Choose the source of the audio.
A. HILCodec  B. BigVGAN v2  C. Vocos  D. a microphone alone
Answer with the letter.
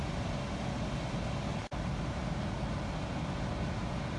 D